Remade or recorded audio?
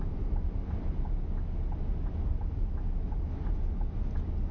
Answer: recorded